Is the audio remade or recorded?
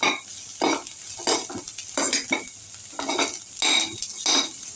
recorded